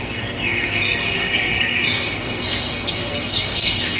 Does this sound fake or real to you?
fake